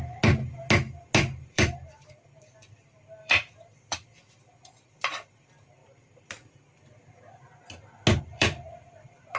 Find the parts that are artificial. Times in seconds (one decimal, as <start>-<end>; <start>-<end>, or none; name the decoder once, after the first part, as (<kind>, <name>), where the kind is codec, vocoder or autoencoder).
1.2-5.8 (vocoder, BigVGAN v2); 8.2-9.4